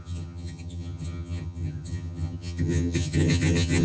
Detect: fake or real fake